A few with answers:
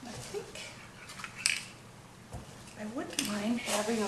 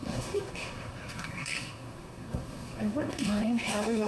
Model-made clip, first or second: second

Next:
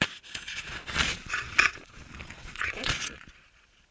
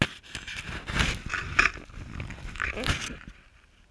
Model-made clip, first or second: first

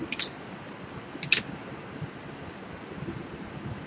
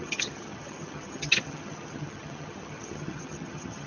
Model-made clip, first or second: second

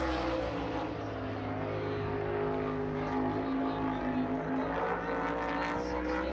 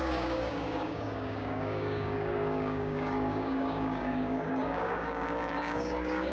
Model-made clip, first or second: second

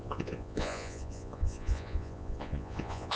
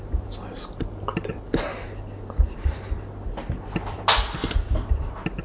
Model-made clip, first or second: first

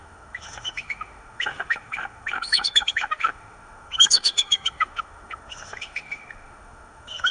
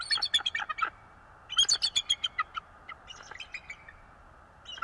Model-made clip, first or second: first